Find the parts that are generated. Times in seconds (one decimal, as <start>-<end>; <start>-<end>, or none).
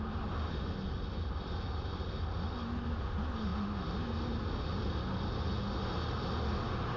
none